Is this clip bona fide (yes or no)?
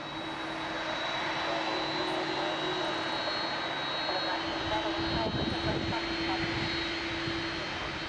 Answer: yes